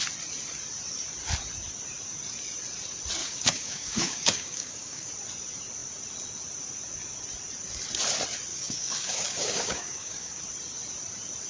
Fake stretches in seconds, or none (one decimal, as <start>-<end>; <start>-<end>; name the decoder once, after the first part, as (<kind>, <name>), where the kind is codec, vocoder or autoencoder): 3.2-5.1 (codec, DAC); 8.5-10.4